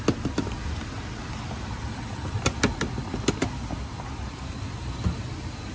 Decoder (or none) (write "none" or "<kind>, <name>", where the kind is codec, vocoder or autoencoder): none